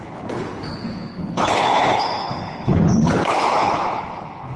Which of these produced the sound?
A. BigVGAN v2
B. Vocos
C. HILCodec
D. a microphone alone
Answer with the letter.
C